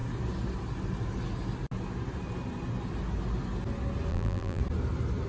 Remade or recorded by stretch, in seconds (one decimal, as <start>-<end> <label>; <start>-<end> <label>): 0.0-4.1 recorded; 4.1-4.6 remade; 4.6-5.3 recorded